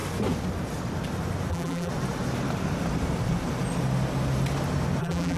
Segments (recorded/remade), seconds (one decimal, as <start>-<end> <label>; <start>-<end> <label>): 0.0-1.5 recorded; 1.5-1.9 remade; 1.9-5.0 recorded; 5.0-5.4 remade